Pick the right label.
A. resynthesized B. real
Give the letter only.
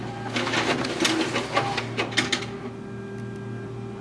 B